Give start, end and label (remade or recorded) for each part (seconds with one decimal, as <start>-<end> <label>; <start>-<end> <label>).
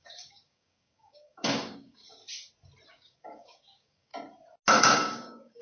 0.0-2.2 remade; 2.2-2.9 recorded; 2.9-4.1 remade; 4.1-4.8 recorded; 4.8-5.6 remade